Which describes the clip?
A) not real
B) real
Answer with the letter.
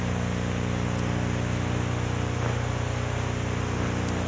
B